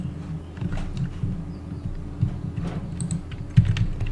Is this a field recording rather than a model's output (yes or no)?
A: yes